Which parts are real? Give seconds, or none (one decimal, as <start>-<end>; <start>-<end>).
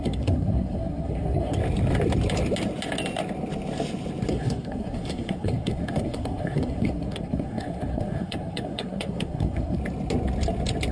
1.6-4.3; 9.8-10.9